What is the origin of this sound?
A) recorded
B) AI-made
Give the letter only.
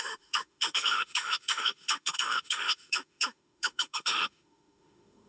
B